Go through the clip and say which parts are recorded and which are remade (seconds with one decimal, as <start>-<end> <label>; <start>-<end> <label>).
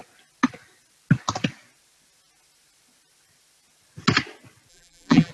0.0-4.7 recorded; 4.7-5.3 remade